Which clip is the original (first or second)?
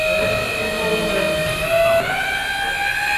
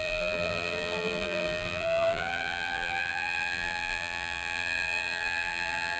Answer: first